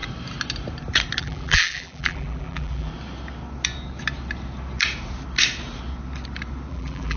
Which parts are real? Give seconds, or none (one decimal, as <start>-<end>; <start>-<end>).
0.0-1.2; 2.9-6.7